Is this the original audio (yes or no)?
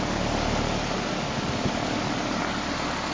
yes